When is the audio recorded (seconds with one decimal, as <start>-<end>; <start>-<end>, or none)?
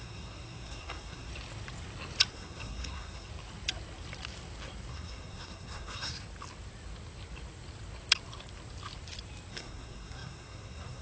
1.3-2.3; 3.3-4.9; 6.1-9.5